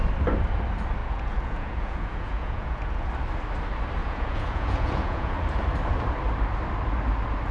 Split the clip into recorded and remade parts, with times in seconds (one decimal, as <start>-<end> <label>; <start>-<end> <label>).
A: 0.0-1.0 recorded; 1.0-3.1 remade; 3.1-4.0 recorded; 4.0-5.3 remade; 5.3-7.5 recorded